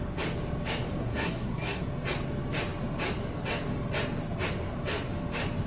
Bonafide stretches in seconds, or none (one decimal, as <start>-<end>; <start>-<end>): 0.0-1.0; 1.8-5.7